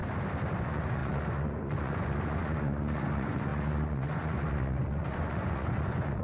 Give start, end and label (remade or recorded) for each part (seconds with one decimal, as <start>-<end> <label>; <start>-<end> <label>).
0.0-0.6 recorded; 0.6-6.2 remade